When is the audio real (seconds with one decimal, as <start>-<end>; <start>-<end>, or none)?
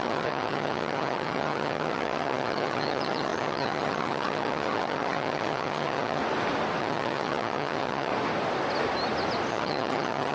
6.2-6.8; 8.1-9.5